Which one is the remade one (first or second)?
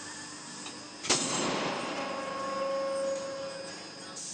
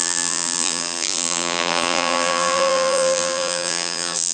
second